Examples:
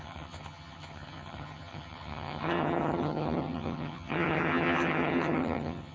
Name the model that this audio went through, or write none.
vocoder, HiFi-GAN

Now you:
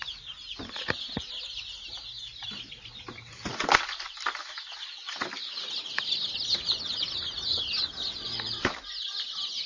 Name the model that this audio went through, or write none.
none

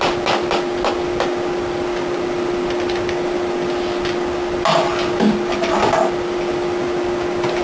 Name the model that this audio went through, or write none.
none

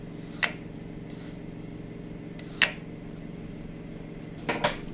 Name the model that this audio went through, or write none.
none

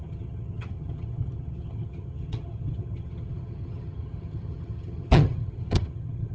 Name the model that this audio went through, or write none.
vocoder, HiFi-GAN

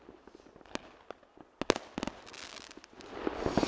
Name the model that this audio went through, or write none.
none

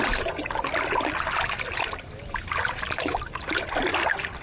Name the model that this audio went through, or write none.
none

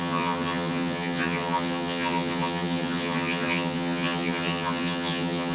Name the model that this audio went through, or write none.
vocoder, HiFi-GAN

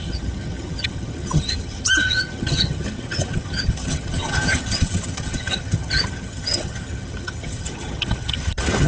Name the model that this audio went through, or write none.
vocoder, HiFi-GAN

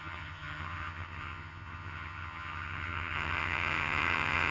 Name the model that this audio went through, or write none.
vocoder, HiFi-GAN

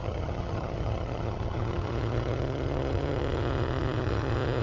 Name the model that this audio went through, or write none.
vocoder, HiFi-GAN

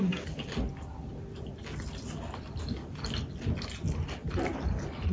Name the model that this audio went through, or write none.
none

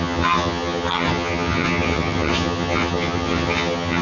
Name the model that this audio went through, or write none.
vocoder, HiFi-GAN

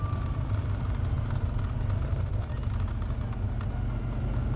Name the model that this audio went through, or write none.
none